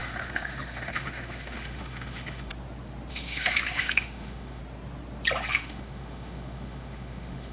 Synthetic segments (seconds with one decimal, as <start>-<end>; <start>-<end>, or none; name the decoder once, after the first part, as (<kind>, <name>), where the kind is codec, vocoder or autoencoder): 0.0-2.5 (autoencoder, DAC-VAE); 3.1-4.6; 5.5-7.5